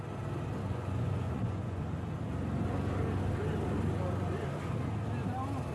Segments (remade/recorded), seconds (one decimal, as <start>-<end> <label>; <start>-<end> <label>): 0.0-0.6 recorded; 0.6-1.8 remade; 1.8-5.7 recorded